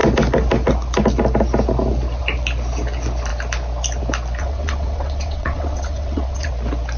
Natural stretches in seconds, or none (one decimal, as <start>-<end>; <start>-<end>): 0.0-4.4; 6.5-7.0